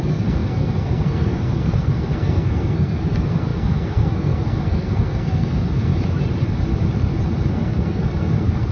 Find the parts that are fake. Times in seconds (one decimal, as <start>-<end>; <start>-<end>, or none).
0.0-5.9; 7.5-8.7